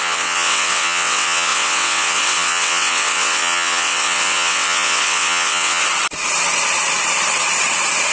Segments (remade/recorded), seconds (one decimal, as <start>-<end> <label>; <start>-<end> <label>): 0.0-5.8 remade; 5.8-8.1 recorded